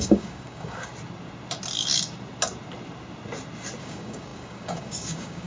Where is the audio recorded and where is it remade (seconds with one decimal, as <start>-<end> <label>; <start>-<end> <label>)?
0.0-0.9 remade; 0.9-3.8 recorded; 3.8-5.5 remade